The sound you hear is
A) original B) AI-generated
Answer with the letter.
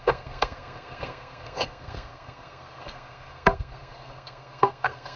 B